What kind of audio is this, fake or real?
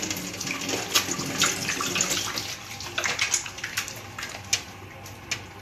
real